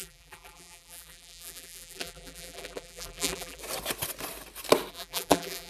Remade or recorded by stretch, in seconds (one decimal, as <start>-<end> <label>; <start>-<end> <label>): 0.0-3.6 remade; 3.6-4.9 recorded; 4.9-5.7 remade